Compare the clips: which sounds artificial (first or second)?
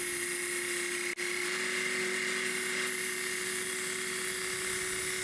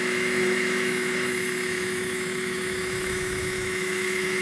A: second